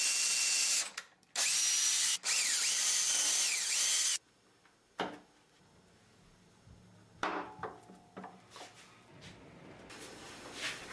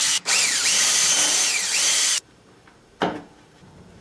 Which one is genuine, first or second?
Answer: first